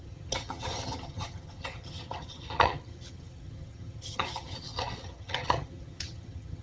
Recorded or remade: remade